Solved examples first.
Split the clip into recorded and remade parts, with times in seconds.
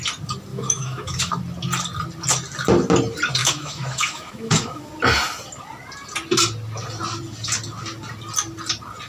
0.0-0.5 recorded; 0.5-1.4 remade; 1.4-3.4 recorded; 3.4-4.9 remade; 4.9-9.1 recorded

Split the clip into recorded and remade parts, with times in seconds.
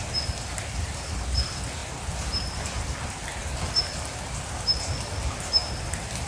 0.0-6.3 recorded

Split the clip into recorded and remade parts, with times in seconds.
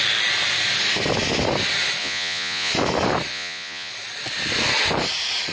0.0-2.0 recorded; 2.0-2.7 remade; 2.7-3.3 recorded; 3.3-3.9 remade; 3.9-5.5 recorded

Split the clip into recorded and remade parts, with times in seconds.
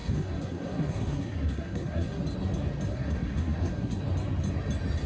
0.0-2.2 remade; 2.2-2.9 recorded; 2.9-4.0 remade; 4.0-5.1 recorded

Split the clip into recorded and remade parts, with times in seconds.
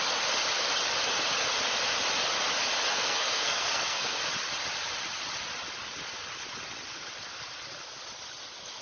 0.0-2.9 recorded; 2.9-4.3 remade; 4.3-8.8 recorded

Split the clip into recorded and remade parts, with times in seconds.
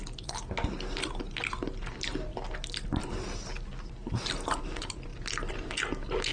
0.0-6.3 recorded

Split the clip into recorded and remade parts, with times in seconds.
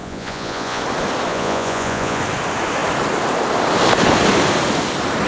0.0-0.8 remade; 0.8-1.3 recorded; 1.3-2.2 remade; 2.2-5.3 recorded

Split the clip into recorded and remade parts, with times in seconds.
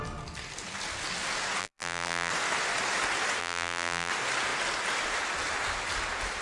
0.0-1.6 recorded; 1.6-2.3 remade; 2.3-3.4 recorded; 3.4-4.1 remade; 4.1-6.4 recorded